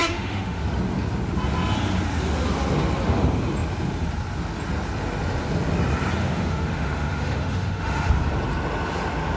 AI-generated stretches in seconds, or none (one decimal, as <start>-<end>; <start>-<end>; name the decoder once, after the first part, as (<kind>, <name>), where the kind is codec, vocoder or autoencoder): 0.0-0.6 (autoencoder, DAC-VAE); 6.2-8.1